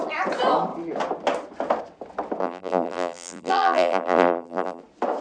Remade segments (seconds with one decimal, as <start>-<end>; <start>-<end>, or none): 2.4-4.8